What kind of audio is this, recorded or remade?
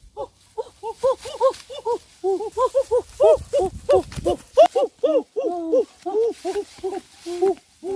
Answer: recorded